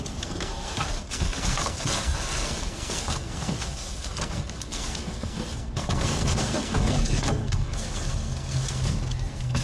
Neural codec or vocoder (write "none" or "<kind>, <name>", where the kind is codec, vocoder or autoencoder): codec, SNAC